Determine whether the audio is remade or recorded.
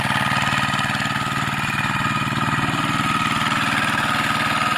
recorded